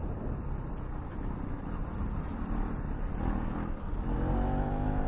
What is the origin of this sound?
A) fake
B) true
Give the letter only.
B